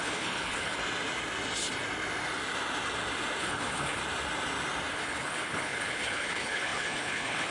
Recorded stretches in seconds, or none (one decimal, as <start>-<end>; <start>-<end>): 0.8-3.4; 4.0-4.9